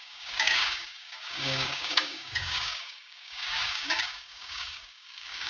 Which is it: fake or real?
fake